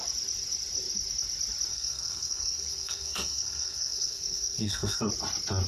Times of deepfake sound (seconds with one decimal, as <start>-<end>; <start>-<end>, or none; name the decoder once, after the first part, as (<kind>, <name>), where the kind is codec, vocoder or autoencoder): 1.7-5.1 (codec, SNAC)